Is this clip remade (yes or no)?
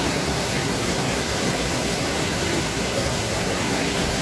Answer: yes